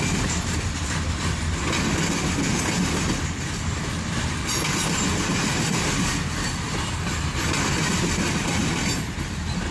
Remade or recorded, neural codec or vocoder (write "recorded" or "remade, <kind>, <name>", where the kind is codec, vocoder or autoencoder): recorded